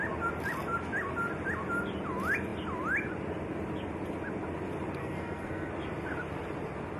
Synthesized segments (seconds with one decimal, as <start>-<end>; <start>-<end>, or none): 5.0-5.7